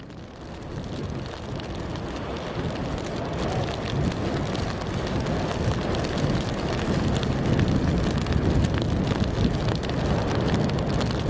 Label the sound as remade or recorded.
recorded